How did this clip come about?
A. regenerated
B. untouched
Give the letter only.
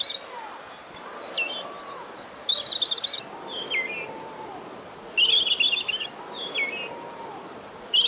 B